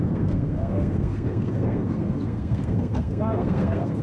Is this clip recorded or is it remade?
remade